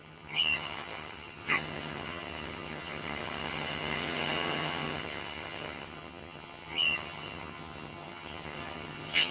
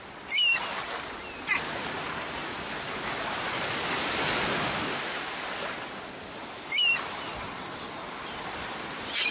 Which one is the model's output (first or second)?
first